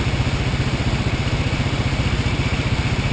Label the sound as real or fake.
real